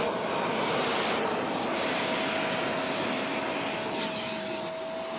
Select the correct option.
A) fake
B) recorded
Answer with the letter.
A